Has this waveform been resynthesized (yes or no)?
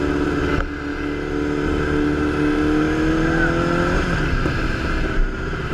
no